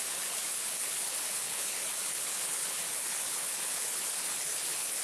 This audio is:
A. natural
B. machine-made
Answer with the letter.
B